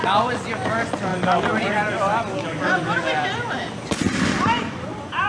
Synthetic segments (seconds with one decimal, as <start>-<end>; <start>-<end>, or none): none